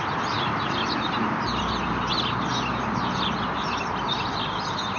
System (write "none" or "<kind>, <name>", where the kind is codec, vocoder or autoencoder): none